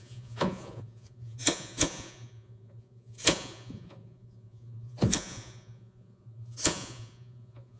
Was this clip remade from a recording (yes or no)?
yes